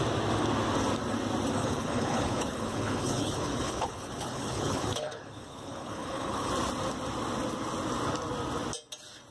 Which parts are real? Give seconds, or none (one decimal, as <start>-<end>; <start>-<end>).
0.0-1.6; 6.5-9.3